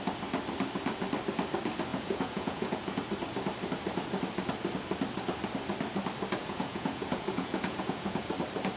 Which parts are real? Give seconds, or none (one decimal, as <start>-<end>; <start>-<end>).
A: 0.0-1.9; 3.0-6.4; 8.3-8.8